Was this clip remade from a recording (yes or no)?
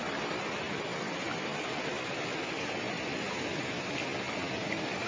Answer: no